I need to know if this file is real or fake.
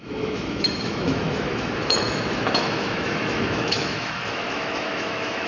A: fake